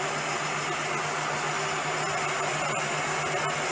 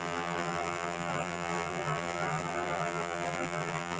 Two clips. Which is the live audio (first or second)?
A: first